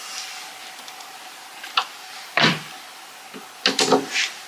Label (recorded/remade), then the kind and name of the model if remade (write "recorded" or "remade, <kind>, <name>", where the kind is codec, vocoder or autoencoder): recorded